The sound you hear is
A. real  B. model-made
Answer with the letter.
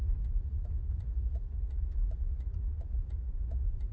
B